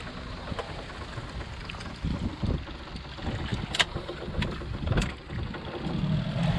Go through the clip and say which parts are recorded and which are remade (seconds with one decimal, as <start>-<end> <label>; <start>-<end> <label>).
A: 0.0-6.6 recorded